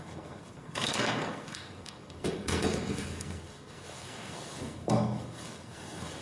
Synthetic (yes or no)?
yes